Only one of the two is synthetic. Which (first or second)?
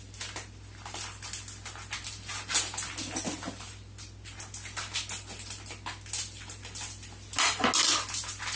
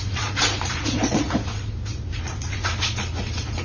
second